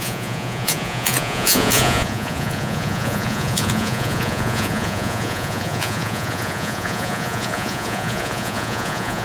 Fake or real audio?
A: fake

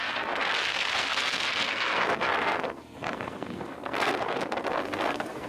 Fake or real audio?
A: fake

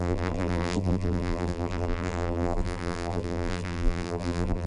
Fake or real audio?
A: fake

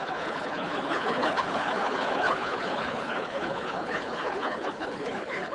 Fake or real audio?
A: fake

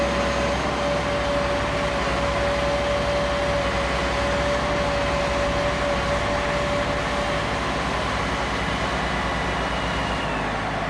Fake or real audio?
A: real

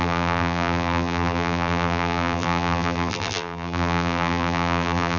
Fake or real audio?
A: fake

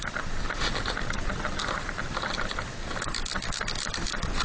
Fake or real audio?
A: real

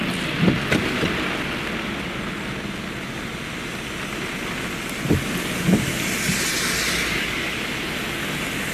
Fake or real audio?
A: real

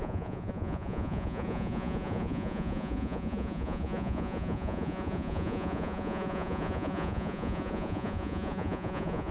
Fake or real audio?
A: fake